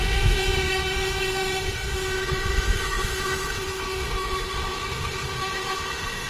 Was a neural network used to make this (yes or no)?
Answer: yes